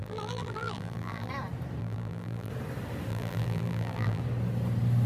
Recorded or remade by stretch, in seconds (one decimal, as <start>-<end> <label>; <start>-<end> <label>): 0.0-1.3 remade; 1.3-1.8 recorded; 1.8-2.5 remade; 2.5-3.1 recorded; 3.1-4.2 remade; 4.2-5.1 recorded